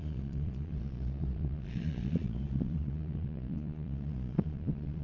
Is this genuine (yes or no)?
no